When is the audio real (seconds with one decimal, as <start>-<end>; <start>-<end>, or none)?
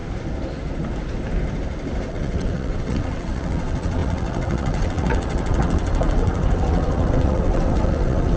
0.0-2.1